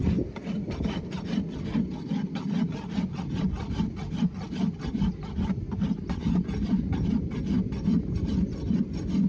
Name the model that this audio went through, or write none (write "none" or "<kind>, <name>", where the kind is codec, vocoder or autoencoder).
none